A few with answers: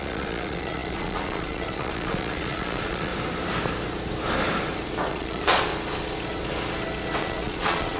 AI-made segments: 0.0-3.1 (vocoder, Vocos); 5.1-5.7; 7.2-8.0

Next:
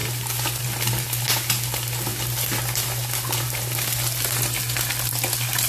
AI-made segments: none

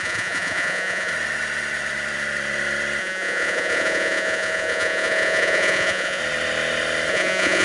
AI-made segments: 0.0-1.1 (vocoder, Vocos); 3.0-6.2; 7.1-7.6

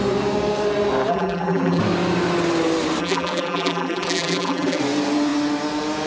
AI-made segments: 1.1-1.8 (vocoder, BigVGAN v2); 3.0-4.8

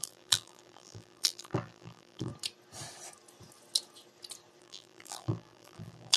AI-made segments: 0.0-2.3 (vocoder, BigVGAN v2); 4.6-6.2

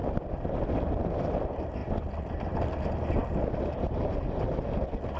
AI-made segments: 1.8-2.8 (vocoder, BigVGAN v2)

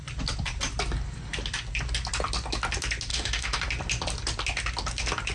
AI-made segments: 3.1-3.6 (autoencoder, DAC-VAE)